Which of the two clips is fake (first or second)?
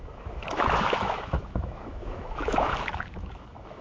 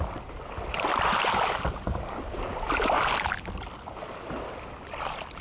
first